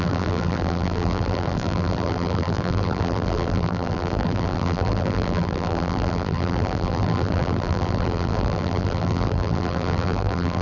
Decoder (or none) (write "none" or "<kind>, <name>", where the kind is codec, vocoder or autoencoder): vocoder, BigVGAN v2